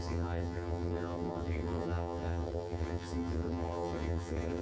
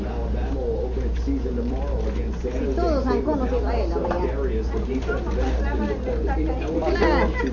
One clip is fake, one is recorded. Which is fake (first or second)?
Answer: first